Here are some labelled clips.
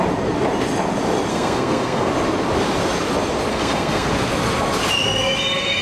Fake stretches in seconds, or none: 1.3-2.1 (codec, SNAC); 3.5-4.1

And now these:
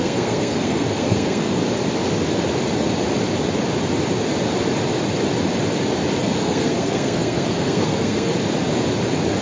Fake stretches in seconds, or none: 0.0-1.6 (codec, SNAC); 6.2-8.3

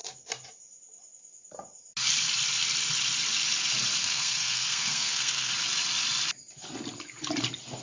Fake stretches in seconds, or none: 4.0-5.5 (codec, SNAC)

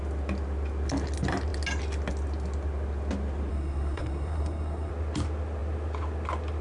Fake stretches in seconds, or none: 3.5-4.9 (codec, SNAC)

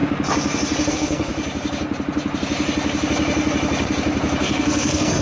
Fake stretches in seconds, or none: 0.9-1.3 (codec, SNAC); 4.4-5.2

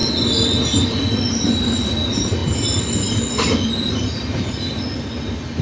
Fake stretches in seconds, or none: none

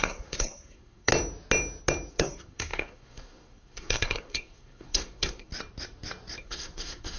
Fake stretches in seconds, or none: 0.0-1.1 (codec, SNAC); 2.1-5.5; 6.4-7.2

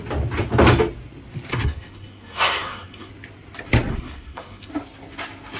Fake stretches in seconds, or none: 1.5-3.1 (codec, SNAC); 3.9-4.7